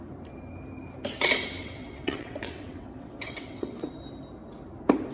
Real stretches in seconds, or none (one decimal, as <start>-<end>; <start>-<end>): 0.0-1.6; 3.9-5.1